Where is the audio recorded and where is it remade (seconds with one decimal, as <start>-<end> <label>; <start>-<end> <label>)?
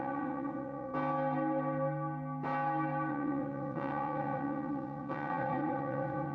0.0-0.9 remade; 0.9-3.1 recorded; 3.1-6.3 remade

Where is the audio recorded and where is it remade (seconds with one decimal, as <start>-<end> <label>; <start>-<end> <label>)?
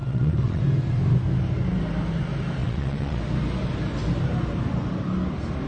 0.0-0.6 remade; 0.6-2.6 recorded; 2.6-3.2 remade; 3.2-5.7 recorded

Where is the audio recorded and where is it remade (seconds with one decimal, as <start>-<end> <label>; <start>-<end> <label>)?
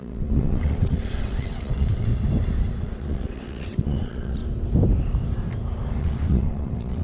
0.0-2.1 remade; 2.1-2.8 recorded; 2.8-4.4 remade; 4.4-6.0 recorded; 6.0-7.0 remade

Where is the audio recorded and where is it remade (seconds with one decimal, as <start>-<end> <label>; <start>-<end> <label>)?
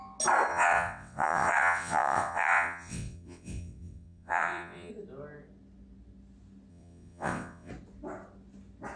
0.0-0.5 recorded; 0.5-4.9 remade; 4.9-6.7 recorded; 6.7-7.7 remade; 7.7-9.0 recorded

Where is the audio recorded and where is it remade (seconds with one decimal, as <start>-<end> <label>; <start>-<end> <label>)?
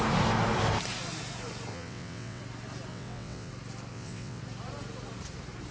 0.0-1.7 recorded; 1.7-2.4 remade; 2.4-2.9 recorded; 2.9-3.5 remade; 3.5-3.9 recorded; 3.9-4.4 remade; 4.4-5.7 recorded